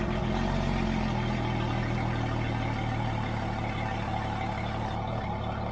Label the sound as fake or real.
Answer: real